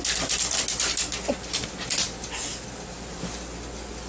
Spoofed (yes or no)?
no